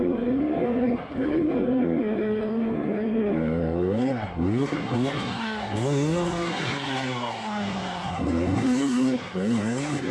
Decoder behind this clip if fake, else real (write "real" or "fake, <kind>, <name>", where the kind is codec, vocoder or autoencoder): fake, codec, SNAC